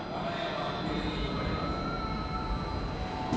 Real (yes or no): yes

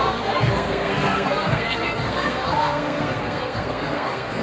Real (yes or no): no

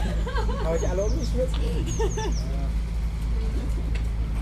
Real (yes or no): yes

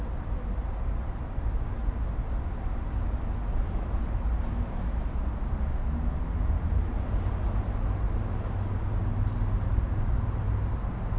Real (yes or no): yes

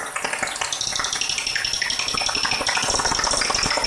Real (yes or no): yes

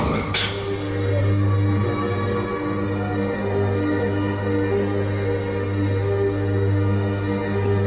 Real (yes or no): yes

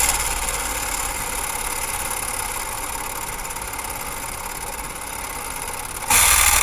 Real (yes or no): yes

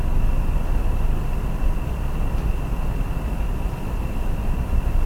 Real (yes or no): yes